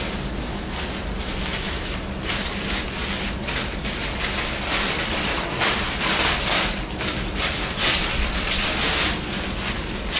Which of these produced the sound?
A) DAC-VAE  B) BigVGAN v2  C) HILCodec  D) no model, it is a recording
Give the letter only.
B